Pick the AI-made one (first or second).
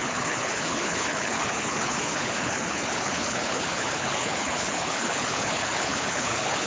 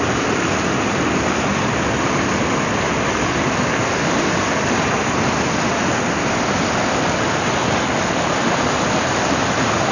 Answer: first